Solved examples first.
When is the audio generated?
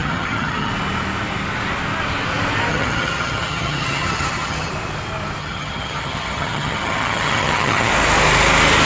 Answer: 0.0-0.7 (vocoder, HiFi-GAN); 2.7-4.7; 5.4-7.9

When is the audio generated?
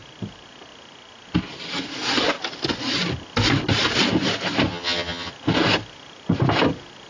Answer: 4.7-5.3 (vocoder, HiFi-GAN)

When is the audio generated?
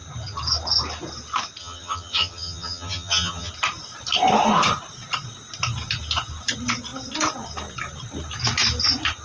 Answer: 1.6-3.5 (vocoder, HiFi-GAN)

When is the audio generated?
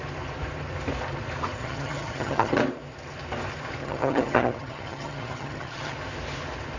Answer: 1.6-2.6 (vocoder, HiFi-GAN); 3.8-5.9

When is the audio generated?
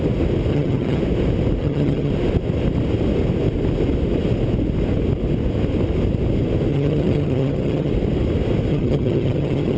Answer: 0.5-1.0 (vocoder, HiFi-GAN); 1.6-2.1; 6.7-7.9; 8.7-9.8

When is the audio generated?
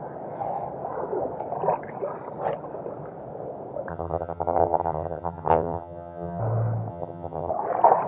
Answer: 3.9-6.4 (vocoder, HiFi-GAN); 6.9-7.5